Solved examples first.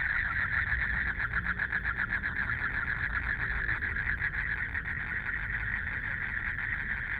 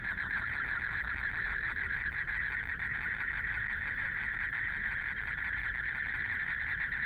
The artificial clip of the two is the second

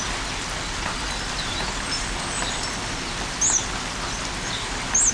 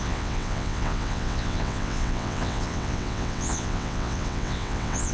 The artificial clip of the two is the second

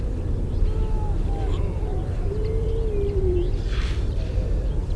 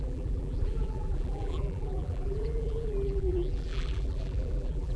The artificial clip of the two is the second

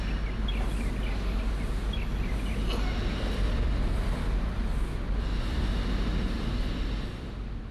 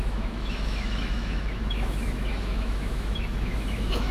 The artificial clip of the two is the second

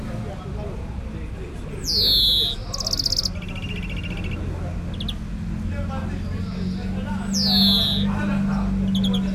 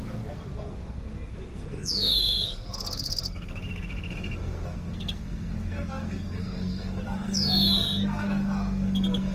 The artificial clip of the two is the second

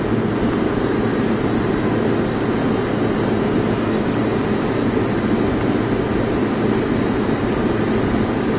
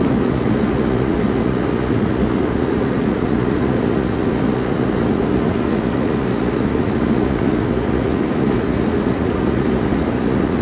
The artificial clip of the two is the second